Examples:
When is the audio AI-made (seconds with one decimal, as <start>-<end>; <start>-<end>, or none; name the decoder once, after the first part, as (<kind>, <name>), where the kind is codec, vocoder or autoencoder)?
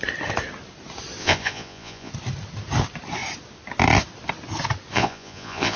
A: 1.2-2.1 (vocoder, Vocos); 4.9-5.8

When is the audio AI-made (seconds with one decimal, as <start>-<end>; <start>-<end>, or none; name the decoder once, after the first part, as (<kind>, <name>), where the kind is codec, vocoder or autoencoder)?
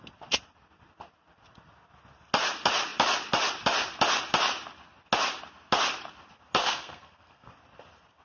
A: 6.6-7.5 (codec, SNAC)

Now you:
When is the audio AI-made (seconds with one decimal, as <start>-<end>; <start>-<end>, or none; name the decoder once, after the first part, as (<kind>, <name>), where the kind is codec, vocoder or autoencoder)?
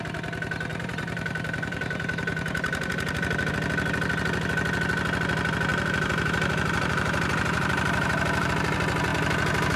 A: 0.7-3.5 (vocoder, BigVGAN v2); 5.7-8.5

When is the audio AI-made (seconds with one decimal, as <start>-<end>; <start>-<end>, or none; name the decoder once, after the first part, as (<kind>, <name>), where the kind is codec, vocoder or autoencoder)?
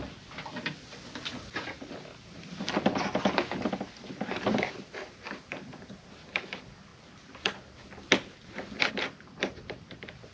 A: none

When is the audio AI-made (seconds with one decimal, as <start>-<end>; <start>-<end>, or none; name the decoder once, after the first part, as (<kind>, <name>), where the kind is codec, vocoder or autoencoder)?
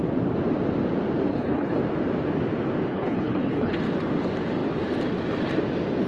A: 1.3-1.8 (codec, HILCodec); 2.9-3.8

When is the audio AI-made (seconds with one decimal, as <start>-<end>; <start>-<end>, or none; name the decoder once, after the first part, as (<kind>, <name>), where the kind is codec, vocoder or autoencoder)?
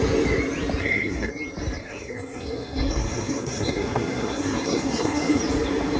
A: 0.8-1.3 (codec, SNAC); 1.8-5.4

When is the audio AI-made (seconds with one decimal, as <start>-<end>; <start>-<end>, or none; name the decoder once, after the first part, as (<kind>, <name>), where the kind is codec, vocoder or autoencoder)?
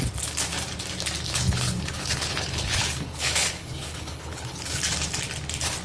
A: 1.3-4.8 (codec, HILCodec)